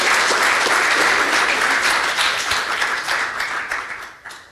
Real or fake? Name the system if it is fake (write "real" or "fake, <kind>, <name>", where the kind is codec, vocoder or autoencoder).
real